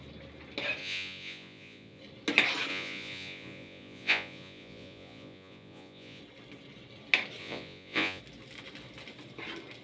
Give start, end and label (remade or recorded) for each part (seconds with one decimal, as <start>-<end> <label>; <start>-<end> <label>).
0.0-0.8 recorded; 0.8-2.0 remade; 2.0-2.7 recorded; 2.7-6.2 remade; 6.2-7.4 recorded; 7.4-8.2 remade; 8.2-9.8 recorded